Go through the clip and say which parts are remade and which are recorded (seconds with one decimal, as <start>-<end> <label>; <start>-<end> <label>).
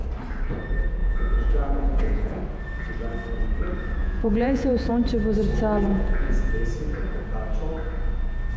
0.0-1.0 recorded; 1.0-2.4 remade; 2.4-4.0 recorded; 4.0-4.9 remade; 4.9-5.9 recorded; 5.9-6.5 remade; 6.5-8.6 recorded